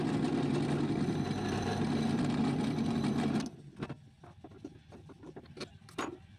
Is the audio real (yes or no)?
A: yes